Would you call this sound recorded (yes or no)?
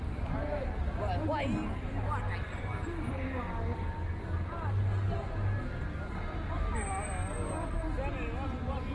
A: yes